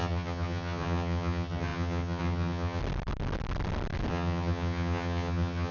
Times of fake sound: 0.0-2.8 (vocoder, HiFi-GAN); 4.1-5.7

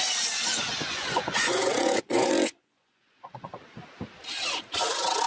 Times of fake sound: 0.5-3.7 (vocoder, Vocos)

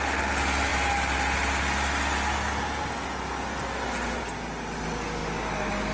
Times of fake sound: none

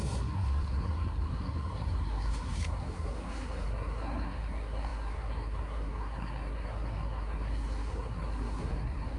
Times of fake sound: 0.0-9.2 (codec, SNAC)

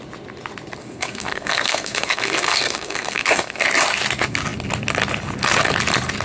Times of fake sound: 0.8-3.6 (codec, SNAC)

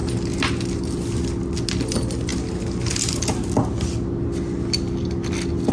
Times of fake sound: none